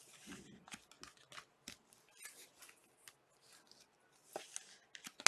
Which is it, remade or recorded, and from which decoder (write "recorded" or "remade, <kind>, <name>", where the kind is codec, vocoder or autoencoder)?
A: recorded